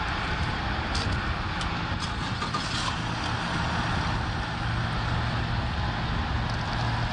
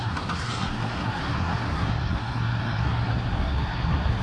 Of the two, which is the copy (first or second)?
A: second